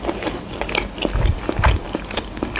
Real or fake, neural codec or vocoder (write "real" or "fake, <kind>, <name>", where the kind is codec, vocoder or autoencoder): real